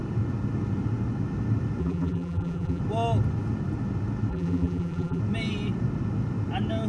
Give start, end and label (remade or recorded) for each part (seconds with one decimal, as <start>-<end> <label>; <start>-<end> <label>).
0.0-1.8 recorded; 1.8-2.8 remade; 2.8-4.3 recorded; 4.3-5.2 remade; 5.2-6.9 recorded